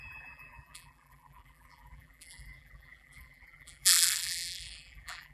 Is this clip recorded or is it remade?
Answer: remade